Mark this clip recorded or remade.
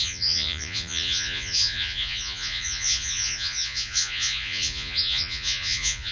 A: remade